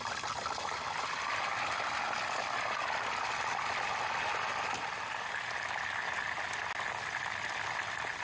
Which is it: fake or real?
real